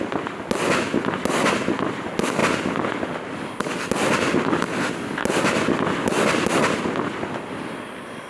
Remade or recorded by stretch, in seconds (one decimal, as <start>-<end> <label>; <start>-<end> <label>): 0.0-8.3 recorded

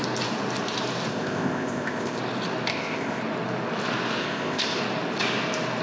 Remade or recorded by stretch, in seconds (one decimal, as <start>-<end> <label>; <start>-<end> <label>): 0.0-1.1 recorded; 1.1-2.2 remade; 2.2-2.7 recorded; 2.7-3.2 remade; 3.2-4.2 recorded; 4.2-4.8 remade; 4.8-5.8 recorded